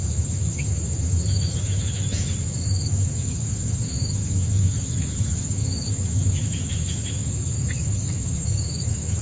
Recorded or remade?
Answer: remade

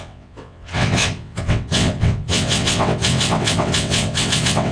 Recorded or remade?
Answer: remade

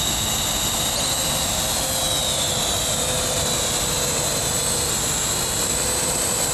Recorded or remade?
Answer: recorded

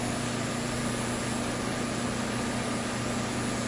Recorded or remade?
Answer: recorded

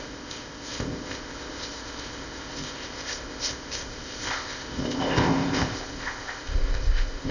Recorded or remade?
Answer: remade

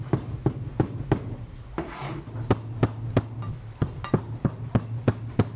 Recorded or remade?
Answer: recorded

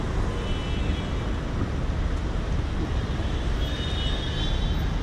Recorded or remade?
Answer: recorded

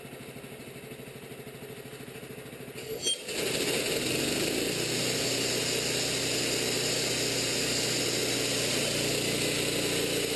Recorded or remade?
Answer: recorded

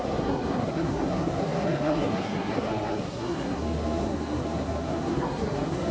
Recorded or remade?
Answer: remade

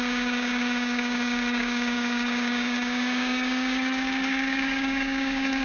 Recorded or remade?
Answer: remade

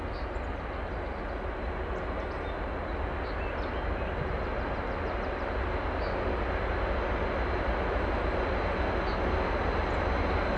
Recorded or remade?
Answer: recorded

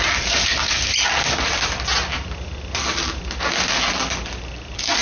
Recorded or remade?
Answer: recorded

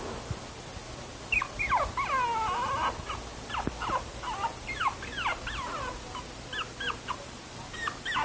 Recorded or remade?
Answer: recorded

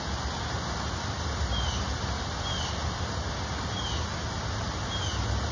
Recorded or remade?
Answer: recorded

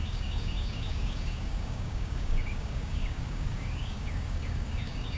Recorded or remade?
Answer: remade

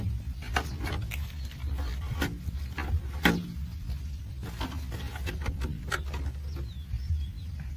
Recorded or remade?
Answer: recorded